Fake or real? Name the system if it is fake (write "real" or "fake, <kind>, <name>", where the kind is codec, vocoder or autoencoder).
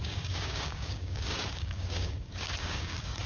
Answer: fake, codec, DAC